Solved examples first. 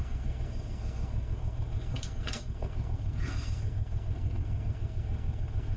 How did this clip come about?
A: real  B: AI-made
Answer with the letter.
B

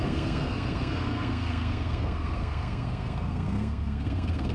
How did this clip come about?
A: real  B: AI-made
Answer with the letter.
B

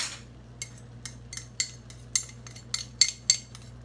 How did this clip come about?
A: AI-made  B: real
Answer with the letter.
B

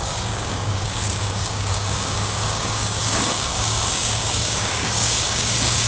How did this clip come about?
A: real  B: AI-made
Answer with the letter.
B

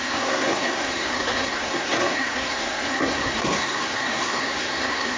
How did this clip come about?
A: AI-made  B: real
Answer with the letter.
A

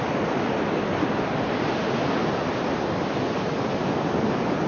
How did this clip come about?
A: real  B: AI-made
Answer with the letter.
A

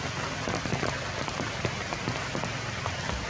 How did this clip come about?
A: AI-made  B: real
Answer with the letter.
B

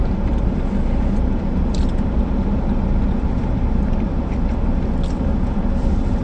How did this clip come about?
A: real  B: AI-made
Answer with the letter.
B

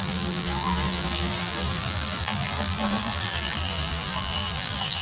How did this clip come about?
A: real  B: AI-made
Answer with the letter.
B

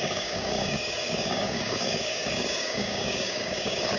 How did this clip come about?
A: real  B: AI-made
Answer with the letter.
B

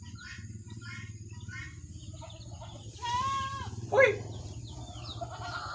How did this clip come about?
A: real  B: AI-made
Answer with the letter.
A